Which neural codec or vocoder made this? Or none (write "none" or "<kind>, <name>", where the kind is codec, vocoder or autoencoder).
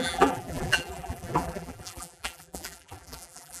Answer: vocoder, BigVGAN v2